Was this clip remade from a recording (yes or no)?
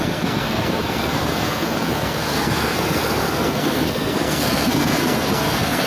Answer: yes